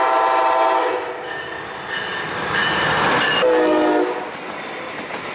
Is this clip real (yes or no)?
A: yes